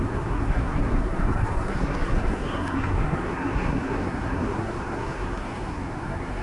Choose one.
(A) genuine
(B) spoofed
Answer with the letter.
B